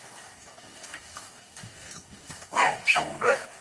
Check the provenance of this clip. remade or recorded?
remade